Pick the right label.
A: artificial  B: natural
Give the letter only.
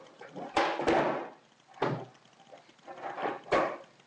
B